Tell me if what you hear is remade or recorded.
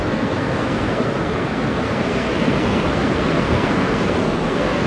remade